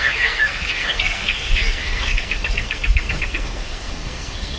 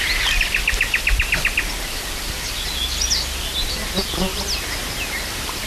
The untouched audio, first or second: second